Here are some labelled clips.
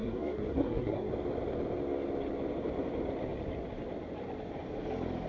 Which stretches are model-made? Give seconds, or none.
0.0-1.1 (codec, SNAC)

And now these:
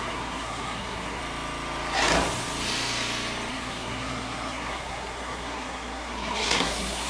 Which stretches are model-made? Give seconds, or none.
0.0-1.2 (codec, SNAC); 3.5-7.1

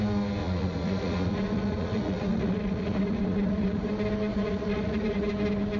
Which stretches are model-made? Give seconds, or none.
0.4-3.9 (vocoder, Vocos); 4.3-5.3